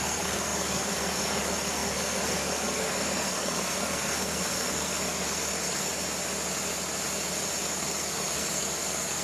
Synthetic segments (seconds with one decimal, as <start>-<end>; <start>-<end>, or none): 0.0-5.9; 7.6-9.2